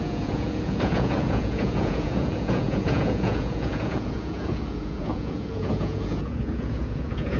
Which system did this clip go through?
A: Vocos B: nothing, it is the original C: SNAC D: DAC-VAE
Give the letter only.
A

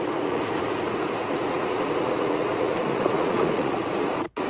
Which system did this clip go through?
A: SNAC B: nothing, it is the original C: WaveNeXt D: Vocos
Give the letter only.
D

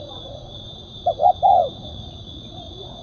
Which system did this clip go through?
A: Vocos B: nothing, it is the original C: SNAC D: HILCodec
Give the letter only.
A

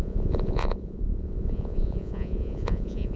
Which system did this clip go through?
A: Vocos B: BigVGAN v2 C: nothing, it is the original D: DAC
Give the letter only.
A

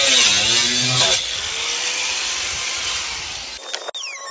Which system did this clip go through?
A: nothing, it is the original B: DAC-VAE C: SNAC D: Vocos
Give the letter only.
A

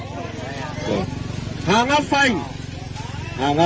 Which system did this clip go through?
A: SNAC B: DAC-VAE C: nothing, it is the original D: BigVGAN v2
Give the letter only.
C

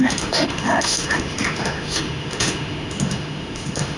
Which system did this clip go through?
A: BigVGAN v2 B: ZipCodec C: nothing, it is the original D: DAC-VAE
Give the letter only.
D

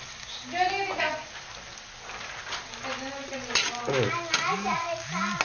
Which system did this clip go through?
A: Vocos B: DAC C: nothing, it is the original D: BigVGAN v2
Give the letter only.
C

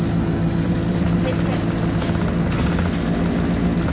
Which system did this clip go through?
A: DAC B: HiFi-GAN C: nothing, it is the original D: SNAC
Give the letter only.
C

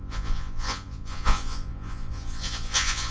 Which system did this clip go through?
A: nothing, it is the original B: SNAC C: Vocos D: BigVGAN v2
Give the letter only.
C